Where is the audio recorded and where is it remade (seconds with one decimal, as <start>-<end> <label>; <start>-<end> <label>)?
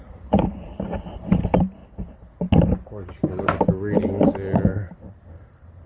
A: 0.0-1.8 remade; 1.8-4.9 recorded; 4.9-5.9 remade